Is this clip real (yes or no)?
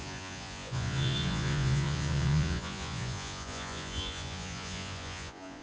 no